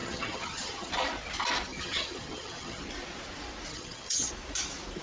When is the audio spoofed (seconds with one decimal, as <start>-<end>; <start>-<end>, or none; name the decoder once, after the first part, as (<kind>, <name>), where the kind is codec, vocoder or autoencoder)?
0.0-0.9 (vocoder, HiFi-GAN); 1.7-2.8; 3.7-4.3